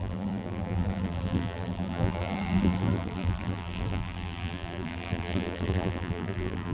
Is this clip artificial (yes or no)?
yes